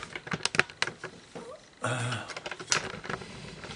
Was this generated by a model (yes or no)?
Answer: no